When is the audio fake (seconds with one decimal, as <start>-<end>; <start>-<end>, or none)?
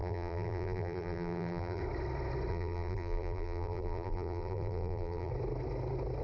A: 0.0-1.8; 2.5-5.3